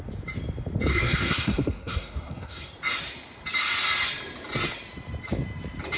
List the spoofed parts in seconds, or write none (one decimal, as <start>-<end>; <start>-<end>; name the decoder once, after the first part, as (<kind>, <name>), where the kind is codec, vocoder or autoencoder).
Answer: 0.9-2.7 (codec, SNAC)